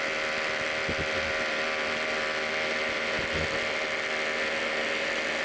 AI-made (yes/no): no